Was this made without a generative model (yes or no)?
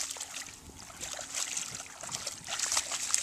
yes